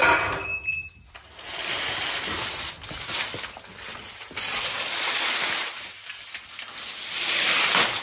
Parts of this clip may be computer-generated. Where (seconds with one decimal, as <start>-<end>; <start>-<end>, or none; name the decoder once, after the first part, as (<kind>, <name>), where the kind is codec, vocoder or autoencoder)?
none